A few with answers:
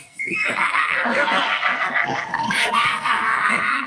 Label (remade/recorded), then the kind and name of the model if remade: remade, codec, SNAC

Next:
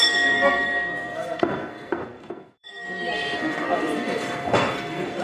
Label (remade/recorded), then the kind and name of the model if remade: remade, codec, SNAC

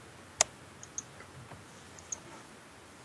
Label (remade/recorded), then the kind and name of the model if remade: recorded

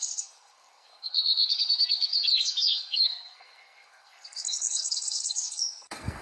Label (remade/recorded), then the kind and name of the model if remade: remade, codec, SNAC